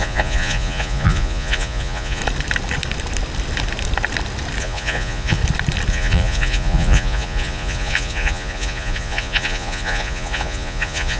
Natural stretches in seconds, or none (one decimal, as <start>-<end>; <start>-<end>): 2.2-4.6; 5.4-5.9